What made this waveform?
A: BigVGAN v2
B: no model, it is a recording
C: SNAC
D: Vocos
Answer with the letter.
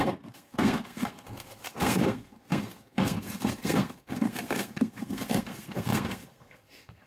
C